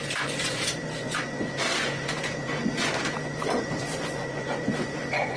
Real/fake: fake